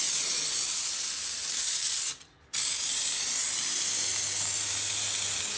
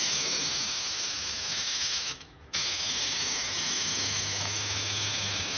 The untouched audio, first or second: first